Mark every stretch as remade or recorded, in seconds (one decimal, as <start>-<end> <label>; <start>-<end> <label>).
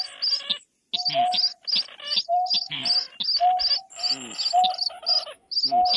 0.0-6.0 recorded